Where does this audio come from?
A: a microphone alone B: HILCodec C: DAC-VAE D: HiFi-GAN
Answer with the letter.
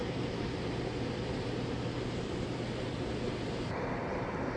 A